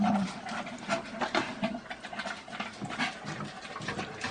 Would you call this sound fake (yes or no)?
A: no